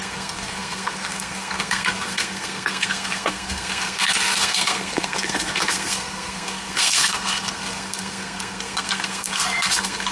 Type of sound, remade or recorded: remade